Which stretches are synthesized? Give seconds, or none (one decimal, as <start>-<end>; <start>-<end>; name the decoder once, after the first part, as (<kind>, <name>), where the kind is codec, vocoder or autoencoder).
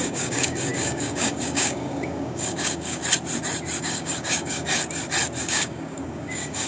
0.0-3.0 (codec, DAC); 3.8-4.8; 5.4-6.7